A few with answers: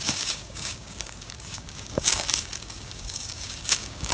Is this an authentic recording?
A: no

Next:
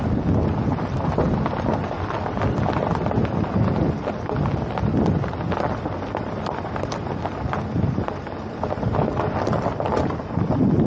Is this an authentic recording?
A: yes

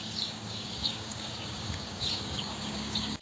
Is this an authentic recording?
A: no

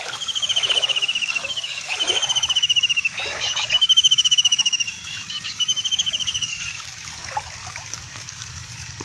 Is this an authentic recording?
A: no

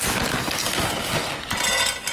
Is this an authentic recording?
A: yes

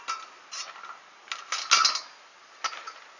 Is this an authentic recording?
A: yes